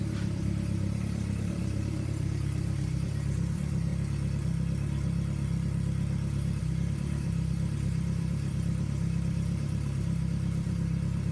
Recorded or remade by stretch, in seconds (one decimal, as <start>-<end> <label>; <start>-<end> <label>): 0.0-3.9 remade; 3.9-6.6 recorded; 6.6-11.3 remade